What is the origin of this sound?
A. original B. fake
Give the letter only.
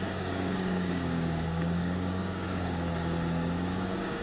B